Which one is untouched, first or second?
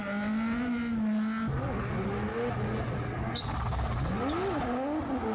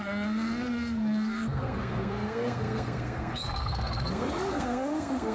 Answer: first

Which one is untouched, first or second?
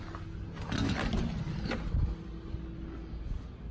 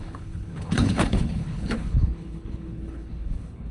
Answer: first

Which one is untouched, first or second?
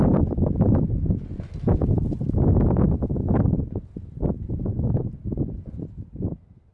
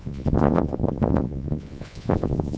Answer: first